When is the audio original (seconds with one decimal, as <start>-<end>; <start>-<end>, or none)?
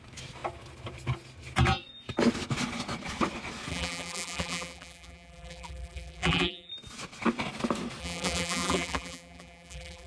0.0-3.7; 6.7-8.0